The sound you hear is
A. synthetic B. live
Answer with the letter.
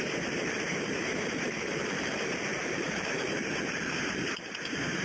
A